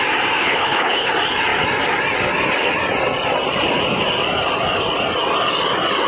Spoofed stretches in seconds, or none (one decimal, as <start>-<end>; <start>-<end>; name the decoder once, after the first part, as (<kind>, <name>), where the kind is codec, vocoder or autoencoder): 0.4-1.1 (codec, HILCodec)

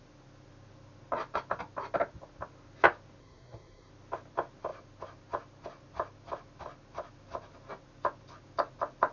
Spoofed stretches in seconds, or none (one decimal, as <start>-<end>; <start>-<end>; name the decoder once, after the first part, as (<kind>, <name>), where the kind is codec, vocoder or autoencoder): 3.2-3.9 (codec, SNAC)

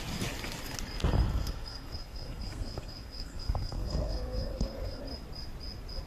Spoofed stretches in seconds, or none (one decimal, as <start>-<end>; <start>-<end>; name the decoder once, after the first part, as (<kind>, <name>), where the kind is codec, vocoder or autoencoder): 1.3-5.0 (codec, SNAC)

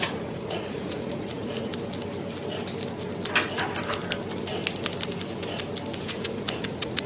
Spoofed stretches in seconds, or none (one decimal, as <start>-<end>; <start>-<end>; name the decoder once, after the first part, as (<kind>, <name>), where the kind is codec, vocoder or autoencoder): 0.0-1.7 (vocoder, Vocos); 6.0-7.1

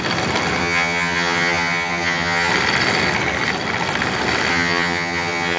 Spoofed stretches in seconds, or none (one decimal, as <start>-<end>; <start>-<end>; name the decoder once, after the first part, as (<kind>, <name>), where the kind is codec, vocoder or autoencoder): 0.6-2.5 (vocoder, HiFi-GAN); 4.5-5.6